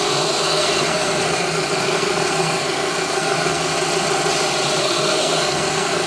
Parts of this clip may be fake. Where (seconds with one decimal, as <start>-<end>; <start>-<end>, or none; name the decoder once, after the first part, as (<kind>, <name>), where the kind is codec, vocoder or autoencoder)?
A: 0.0-3.7 (codec, SNAC); 4.8-6.1